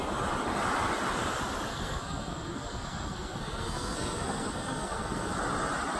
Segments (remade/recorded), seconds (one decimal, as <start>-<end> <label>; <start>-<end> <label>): 0.0-1.7 recorded; 1.7-5.3 remade; 5.3-6.0 recorded